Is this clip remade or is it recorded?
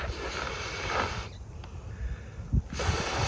recorded